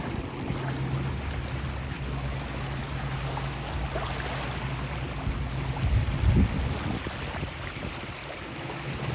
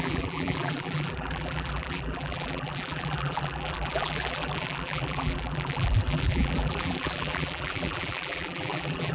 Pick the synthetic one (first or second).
second